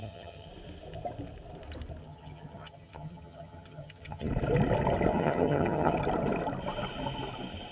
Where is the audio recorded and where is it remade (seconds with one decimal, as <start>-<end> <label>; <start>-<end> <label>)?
0.0-0.5 remade; 0.5-2.0 recorded; 2.0-4.3 remade; 4.3-5.1 recorded; 5.1-5.9 remade; 5.9-7.7 recorded